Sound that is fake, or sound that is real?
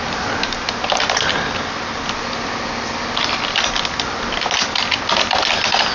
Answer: real